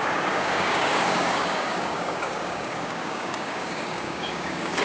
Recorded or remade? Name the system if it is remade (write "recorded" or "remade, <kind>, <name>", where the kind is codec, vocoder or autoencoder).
remade, codec, DAC